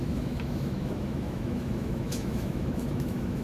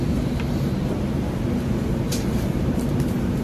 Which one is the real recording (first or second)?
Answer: second